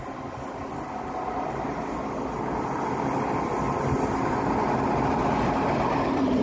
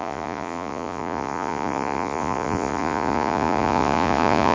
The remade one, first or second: second